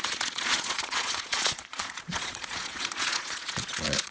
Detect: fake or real fake